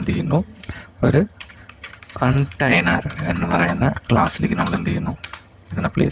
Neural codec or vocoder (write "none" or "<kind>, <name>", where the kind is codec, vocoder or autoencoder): vocoder, HiFi-GAN